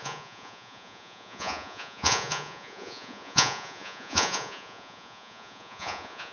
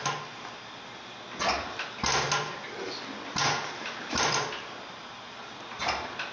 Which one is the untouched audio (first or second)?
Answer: second